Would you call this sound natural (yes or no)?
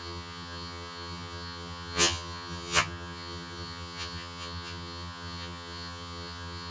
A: no